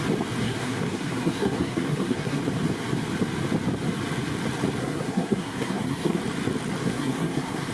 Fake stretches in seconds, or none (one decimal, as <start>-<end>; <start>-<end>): 0.4-2.4; 4.8-6.2; 6.8-7.7